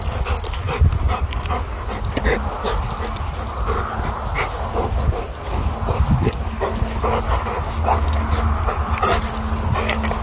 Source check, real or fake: real